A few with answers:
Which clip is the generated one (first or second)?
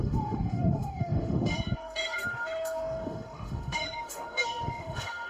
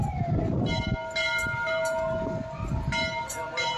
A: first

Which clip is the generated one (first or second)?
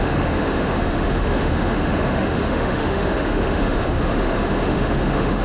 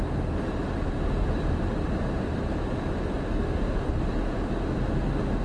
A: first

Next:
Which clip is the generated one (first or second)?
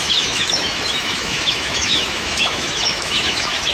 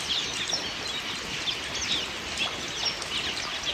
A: first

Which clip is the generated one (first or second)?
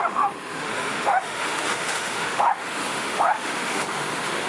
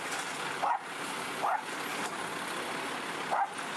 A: first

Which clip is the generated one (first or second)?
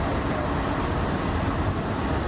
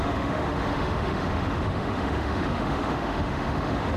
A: second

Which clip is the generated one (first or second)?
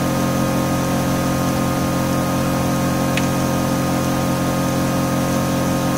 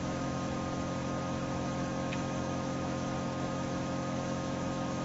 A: second